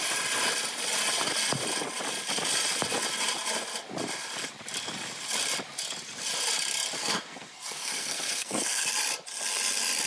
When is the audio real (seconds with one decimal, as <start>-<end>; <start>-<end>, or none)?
0.0-7.0; 8.9-10.1